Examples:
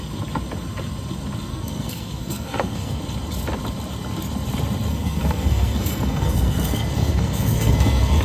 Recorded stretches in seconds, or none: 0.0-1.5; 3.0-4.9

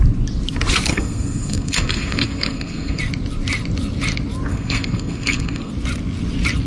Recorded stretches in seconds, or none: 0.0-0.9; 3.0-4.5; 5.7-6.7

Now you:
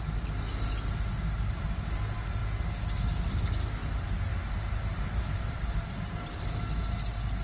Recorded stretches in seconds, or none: 0.0-3.8; 5.8-7.4

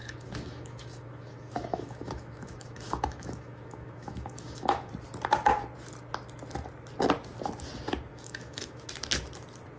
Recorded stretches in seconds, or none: 4.9-8.1; 8.9-9.8

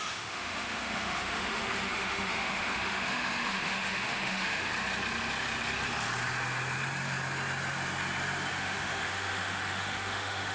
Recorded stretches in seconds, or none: 4.7-8.5

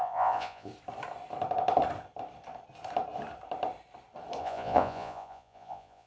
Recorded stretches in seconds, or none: 0.7-4.4